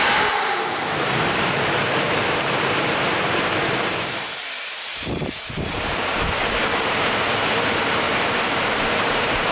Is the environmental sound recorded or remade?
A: remade